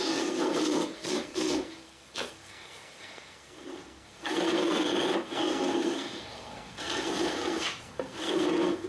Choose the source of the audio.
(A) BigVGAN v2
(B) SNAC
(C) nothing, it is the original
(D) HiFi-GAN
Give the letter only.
B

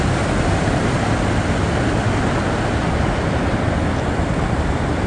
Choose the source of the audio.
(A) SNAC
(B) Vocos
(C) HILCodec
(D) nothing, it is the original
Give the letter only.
D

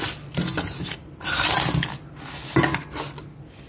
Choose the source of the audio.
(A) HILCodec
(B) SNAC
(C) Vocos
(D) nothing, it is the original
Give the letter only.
D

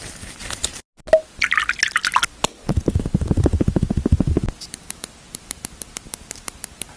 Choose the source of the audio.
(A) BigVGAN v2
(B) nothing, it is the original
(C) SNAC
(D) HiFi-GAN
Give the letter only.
B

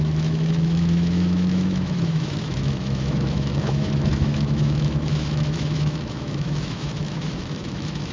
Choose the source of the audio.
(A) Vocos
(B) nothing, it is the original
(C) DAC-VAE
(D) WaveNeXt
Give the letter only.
C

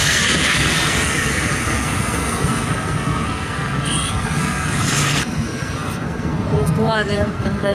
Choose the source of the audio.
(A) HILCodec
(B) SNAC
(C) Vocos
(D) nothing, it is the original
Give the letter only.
B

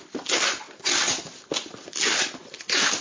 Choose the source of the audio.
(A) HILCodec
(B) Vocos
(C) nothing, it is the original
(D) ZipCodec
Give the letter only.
C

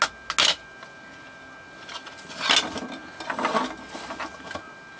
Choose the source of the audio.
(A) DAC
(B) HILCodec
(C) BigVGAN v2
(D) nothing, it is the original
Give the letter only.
D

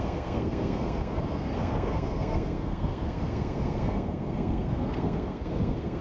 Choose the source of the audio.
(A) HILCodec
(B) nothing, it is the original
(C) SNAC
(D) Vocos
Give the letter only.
C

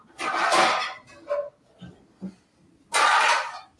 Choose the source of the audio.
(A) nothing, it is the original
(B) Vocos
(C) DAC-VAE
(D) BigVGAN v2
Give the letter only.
A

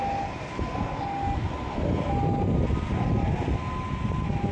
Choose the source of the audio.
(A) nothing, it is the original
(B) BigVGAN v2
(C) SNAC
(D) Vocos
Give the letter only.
A